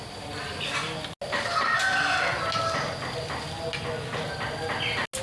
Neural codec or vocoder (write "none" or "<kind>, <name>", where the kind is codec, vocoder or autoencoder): none